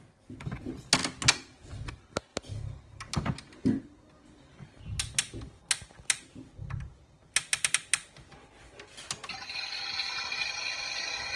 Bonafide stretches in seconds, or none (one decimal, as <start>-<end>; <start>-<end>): 0.0-11.4